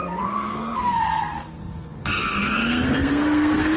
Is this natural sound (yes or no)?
no